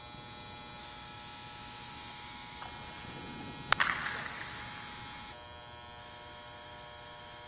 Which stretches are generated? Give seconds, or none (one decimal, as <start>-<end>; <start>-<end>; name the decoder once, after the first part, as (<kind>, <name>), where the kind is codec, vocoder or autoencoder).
0.8-2.6 (autoencoder, DAC-VAE); 4.0-4.6; 6.0-7.5